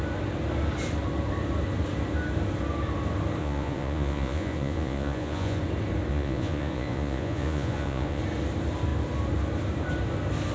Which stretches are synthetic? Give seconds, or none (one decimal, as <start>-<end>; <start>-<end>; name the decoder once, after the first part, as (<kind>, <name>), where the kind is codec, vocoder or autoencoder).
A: 3.4-5.6 (vocoder, Vocos); 6.1-8.2

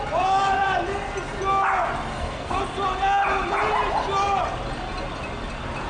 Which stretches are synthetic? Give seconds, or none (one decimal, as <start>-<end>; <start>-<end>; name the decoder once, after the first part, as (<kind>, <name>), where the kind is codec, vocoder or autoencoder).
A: 2.1-2.6 (codec, SNAC)

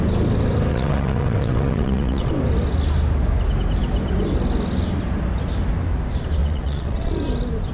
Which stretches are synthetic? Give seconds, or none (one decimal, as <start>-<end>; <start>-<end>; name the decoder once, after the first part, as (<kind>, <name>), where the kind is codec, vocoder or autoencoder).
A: 0.7-2.3 (vocoder, WaveNeXt); 6.4-7.1